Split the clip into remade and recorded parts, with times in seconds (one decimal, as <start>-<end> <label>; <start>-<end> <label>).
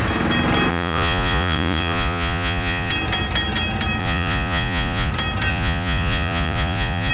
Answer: 0.0-0.7 recorded; 0.7-2.9 remade; 2.9-4.0 recorded; 4.0-5.1 remade; 5.1-5.5 recorded; 5.5-7.1 remade